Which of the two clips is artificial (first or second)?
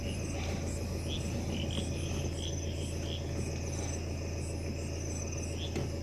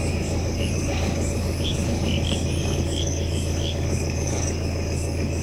second